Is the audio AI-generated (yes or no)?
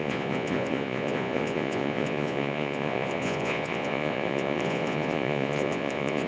yes